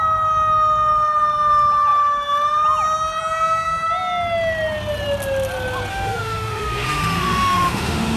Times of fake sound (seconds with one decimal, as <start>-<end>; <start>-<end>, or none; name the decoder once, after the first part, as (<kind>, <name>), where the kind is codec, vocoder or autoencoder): 5.9-8.2 (autoencoder, DAC-VAE)